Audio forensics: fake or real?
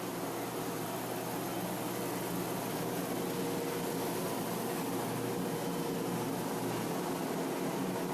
real